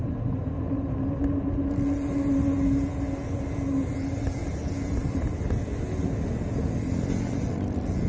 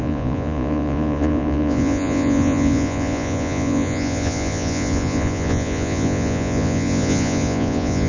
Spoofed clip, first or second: second